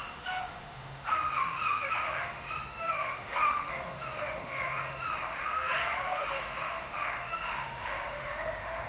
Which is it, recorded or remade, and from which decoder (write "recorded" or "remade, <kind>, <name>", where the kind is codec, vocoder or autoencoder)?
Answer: remade, autoencoder, DAC-VAE